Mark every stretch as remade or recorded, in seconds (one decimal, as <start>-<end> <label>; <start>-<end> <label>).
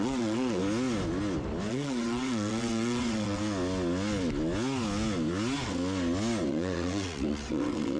0.0-0.6 remade; 0.6-1.7 recorded; 1.7-3.4 remade; 3.4-6.5 recorded; 6.5-8.0 remade